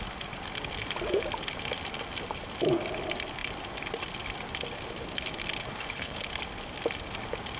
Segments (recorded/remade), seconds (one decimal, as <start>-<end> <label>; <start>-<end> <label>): 0.0-5.6 recorded; 5.6-6.2 remade; 6.2-7.6 recorded